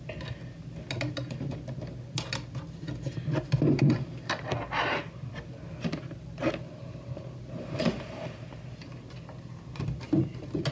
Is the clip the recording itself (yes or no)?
yes